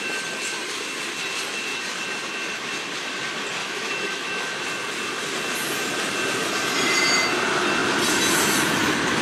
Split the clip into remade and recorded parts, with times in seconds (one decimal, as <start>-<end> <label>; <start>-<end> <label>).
0.0-3.6 recorded; 3.6-4.6 remade; 4.6-9.2 recorded